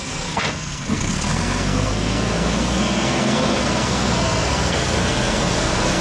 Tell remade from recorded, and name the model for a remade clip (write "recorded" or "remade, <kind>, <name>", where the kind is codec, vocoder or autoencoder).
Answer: remade, codec, SNAC